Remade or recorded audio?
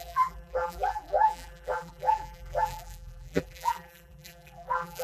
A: remade